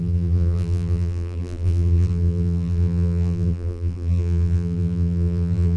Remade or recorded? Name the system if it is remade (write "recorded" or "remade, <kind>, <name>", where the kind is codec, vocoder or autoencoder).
remade, vocoder, BigVGAN v2